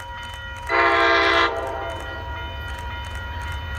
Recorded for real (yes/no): yes